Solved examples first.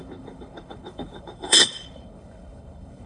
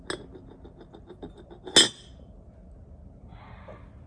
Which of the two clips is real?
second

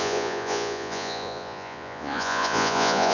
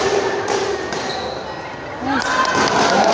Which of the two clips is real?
second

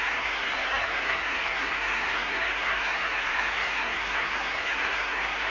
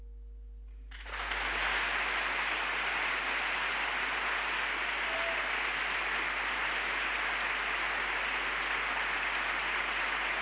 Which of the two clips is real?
second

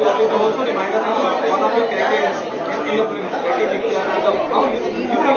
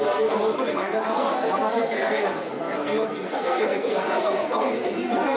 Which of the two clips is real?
first